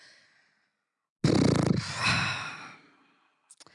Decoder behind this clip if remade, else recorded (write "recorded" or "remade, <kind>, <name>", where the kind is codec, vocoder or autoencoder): recorded